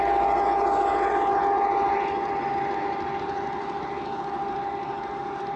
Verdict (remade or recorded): recorded